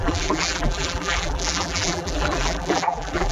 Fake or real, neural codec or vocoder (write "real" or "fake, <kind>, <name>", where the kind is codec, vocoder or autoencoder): fake, vocoder, BigVGAN v2